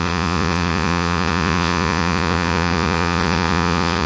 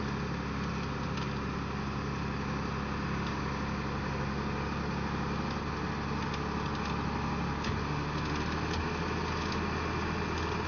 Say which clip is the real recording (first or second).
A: second